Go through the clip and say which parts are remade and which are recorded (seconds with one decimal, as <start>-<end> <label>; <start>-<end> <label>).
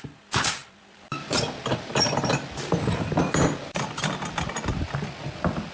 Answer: 0.0-5.7 recorded